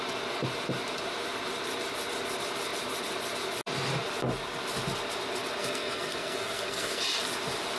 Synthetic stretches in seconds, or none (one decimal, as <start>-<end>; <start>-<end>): 5.6-7.0